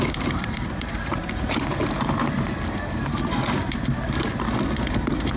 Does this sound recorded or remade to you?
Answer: remade